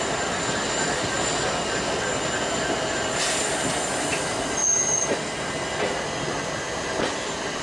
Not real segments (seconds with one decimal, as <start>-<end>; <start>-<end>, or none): none